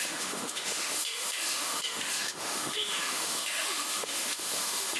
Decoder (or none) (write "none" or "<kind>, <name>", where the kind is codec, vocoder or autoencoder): autoencoder, DAC-VAE